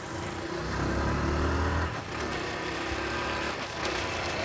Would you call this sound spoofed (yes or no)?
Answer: no